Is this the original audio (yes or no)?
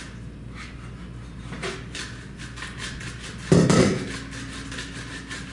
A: yes